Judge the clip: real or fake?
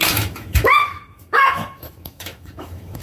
fake